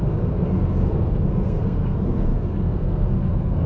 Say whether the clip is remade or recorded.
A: remade